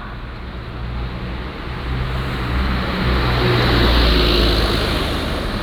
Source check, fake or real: real